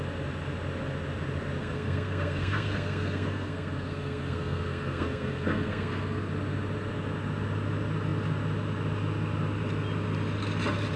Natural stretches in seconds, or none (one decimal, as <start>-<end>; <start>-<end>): 0.0-1.6; 6.3-11.0